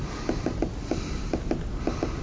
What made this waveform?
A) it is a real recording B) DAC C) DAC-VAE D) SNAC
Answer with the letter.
A